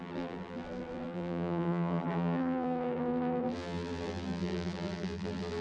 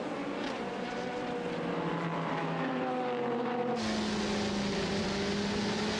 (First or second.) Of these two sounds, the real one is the second